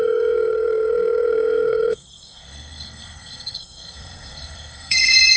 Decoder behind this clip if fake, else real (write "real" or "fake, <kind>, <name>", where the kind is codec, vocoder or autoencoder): fake, codec, SNAC